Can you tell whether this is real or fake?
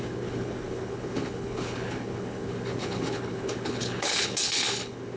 fake